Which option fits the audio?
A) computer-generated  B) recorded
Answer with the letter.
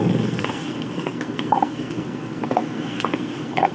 A